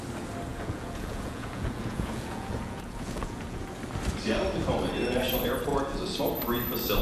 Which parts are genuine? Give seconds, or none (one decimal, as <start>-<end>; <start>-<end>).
0.0-0.5; 3.6-5.7; 6.2-7.0